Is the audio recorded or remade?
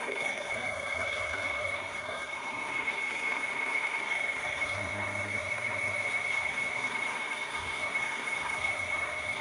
remade